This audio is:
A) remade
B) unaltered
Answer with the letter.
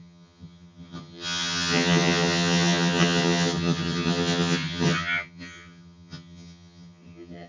A